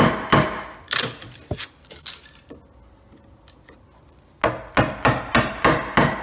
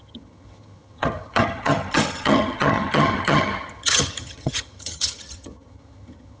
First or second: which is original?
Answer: first